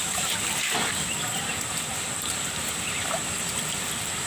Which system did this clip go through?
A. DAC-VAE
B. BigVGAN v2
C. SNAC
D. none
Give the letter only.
D